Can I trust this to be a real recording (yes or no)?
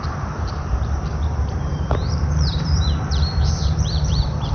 no